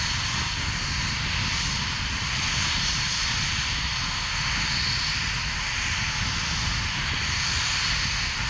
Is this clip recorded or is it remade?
recorded